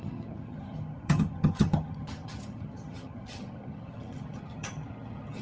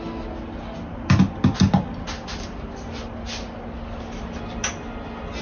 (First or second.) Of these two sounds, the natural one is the second